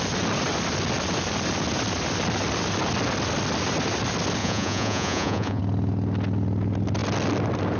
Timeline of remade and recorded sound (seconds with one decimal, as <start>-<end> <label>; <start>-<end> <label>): 0.0-4.4 recorded; 4.4-5.6 remade; 5.6-7.8 recorded